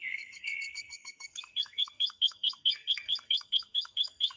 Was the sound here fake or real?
fake